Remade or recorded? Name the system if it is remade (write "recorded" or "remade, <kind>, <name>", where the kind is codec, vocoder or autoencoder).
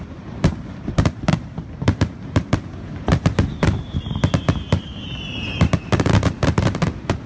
remade, vocoder, BigVGAN v2